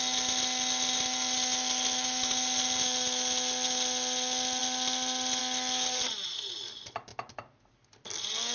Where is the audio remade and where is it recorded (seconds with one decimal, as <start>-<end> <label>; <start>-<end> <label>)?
0.0-8.5 recorded